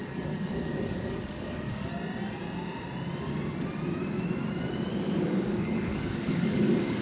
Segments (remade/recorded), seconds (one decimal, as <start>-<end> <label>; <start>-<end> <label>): 0.0-1.9 remade; 1.9-4.9 recorded; 4.9-7.0 remade

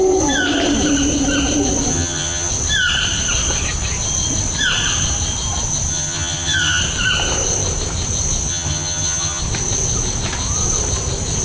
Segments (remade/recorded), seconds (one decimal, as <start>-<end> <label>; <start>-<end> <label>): 0.0-1.9 recorded; 1.9-2.5 remade; 2.5-5.9 recorded; 5.9-6.8 remade; 6.8-8.5 recorded; 8.5-9.4 remade; 9.4-11.4 recorded